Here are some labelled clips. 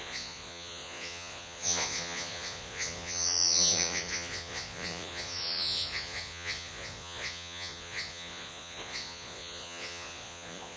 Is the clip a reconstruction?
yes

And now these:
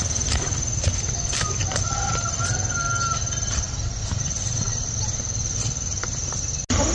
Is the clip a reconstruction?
no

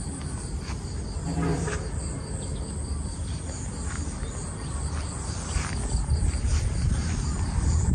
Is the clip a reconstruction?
no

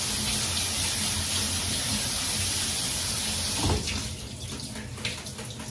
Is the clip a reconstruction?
no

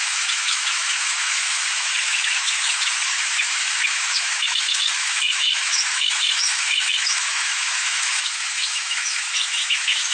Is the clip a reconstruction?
yes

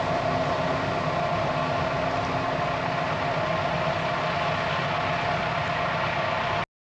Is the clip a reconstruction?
no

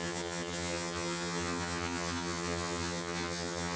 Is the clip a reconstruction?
yes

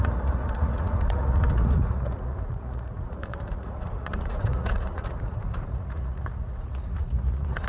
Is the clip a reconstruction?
yes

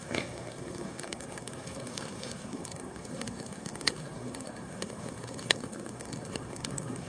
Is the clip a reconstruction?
yes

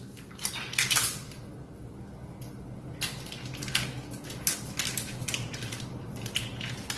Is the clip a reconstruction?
no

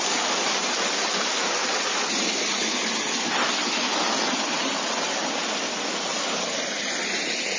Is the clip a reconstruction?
no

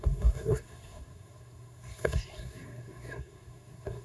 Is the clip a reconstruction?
yes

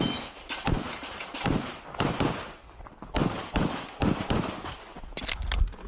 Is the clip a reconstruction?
no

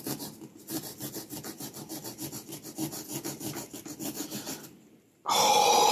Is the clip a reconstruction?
no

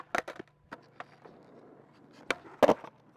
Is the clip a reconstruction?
no